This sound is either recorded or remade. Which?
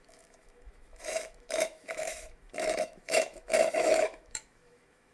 remade